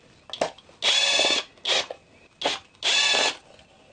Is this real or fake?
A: real